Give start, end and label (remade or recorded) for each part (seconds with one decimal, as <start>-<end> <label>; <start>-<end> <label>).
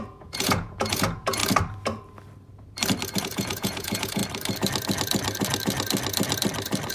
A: 0.0-1.4 remade; 1.4-3.2 recorded; 3.2-4.2 remade; 4.2-6.9 recorded